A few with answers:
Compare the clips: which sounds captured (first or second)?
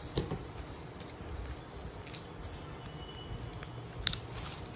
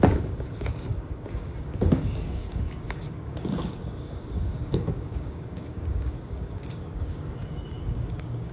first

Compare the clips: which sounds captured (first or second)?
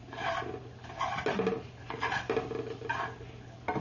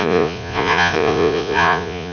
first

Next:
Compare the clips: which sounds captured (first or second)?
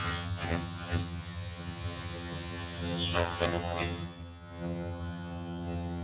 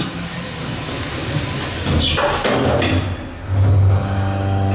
second